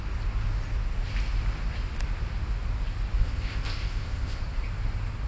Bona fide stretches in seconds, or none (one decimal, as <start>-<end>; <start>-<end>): 0.0-3.2; 4.4-5.3